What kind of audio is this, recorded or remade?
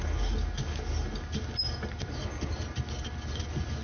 recorded